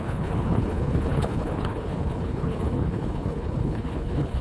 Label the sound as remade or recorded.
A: remade